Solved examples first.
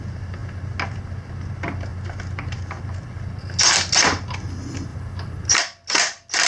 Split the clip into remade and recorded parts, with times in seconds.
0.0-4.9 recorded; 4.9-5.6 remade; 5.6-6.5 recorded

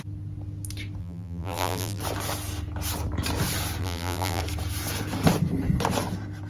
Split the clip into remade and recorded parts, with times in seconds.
0.0-1.0 recorded; 1.0-2.0 remade; 2.0-3.8 recorded; 3.8-4.4 remade; 4.4-6.5 recorded

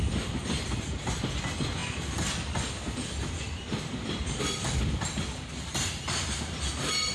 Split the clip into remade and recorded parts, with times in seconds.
0.0-7.1 recorded